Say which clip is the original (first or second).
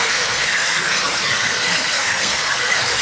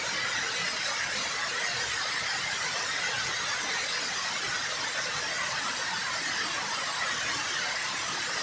second